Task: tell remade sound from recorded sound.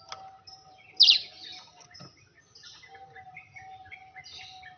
recorded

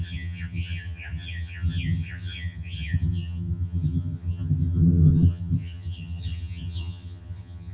remade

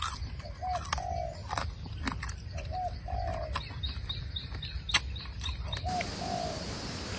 recorded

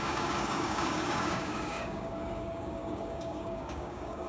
remade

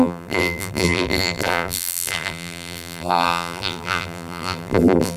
remade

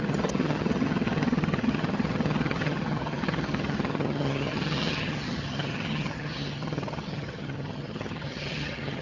remade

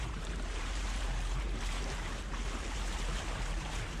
remade